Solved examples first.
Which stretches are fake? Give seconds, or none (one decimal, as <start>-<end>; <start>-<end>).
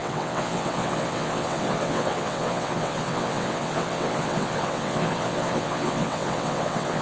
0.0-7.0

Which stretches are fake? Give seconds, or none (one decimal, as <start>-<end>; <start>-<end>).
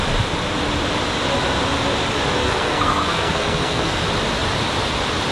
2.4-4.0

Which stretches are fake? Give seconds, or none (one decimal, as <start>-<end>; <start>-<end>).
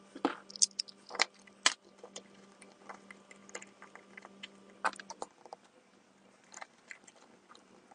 none